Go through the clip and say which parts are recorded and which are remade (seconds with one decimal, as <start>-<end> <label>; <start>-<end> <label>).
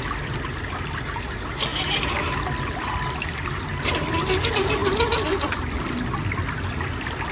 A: 0.0-7.3 recorded